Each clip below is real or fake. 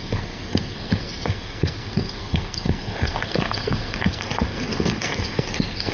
fake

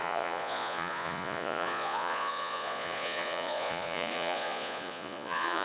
fake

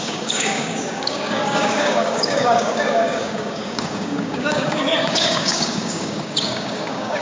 fake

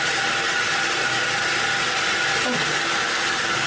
real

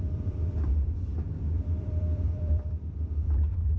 fake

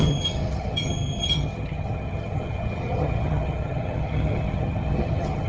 fake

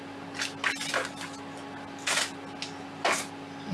real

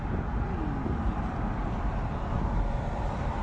real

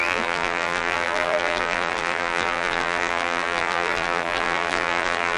fake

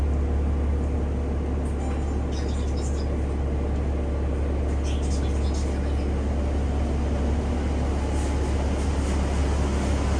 real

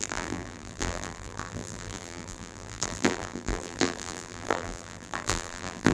fake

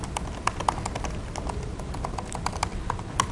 real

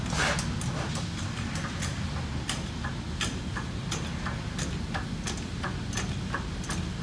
real